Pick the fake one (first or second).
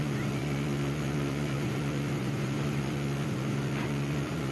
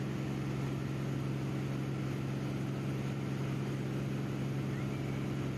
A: first